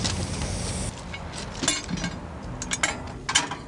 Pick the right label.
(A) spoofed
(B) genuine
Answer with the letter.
B